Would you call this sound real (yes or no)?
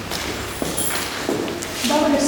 yes